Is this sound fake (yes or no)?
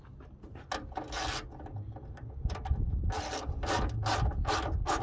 no